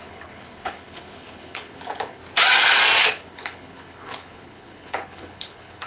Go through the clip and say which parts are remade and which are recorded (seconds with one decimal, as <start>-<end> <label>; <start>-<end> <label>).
0.0-2.2 remade; 2.2-3.0 recorded; 3.0-5.9 remade